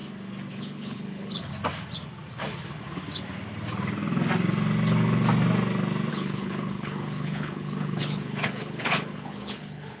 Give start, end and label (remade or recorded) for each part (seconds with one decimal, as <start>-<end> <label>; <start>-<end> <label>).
0.0-0.5 recorded; 0.5-1.5 remade; 1.5-6.1 recorded; 6.1-10.0 remade